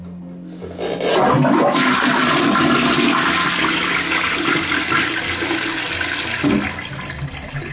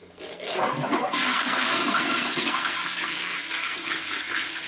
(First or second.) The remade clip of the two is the second